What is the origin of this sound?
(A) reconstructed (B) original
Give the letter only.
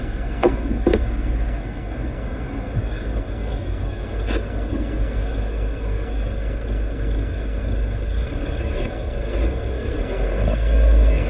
A